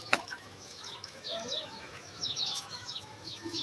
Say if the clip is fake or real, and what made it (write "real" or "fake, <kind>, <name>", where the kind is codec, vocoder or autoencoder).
fake, autoencoder, DAC-VAE